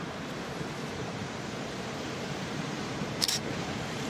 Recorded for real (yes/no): no